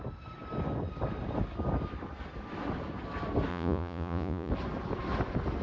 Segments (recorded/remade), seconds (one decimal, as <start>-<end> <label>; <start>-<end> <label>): 0.0-3.5 recorded; 3.5-4.5 remade; 4.5-5.6 recorded